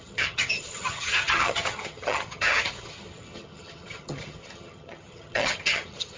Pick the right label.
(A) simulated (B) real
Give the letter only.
A